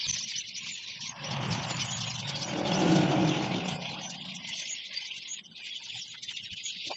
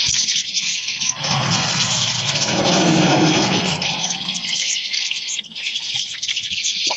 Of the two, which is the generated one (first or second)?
second